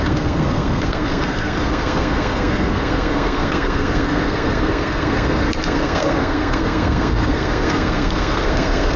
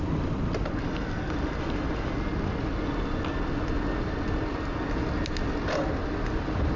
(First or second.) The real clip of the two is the second